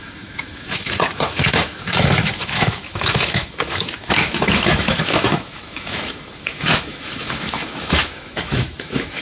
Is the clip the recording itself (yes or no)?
no